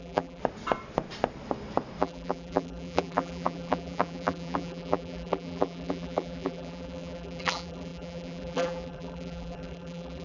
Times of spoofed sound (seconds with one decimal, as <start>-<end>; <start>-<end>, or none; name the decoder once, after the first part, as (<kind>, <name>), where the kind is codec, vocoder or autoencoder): 0.0-0.4 (vocoder, BigVGAN v2); 2.0-10.2